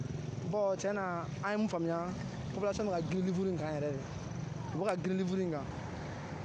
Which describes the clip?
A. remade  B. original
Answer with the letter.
B